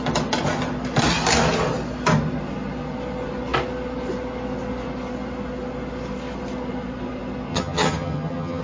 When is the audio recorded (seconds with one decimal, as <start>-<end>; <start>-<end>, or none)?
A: 0.0-7.5